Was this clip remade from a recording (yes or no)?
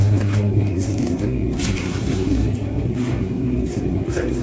yes